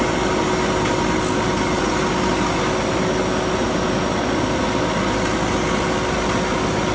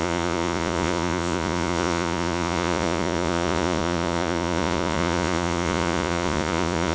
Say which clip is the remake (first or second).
second